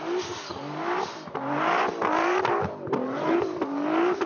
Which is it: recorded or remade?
recorded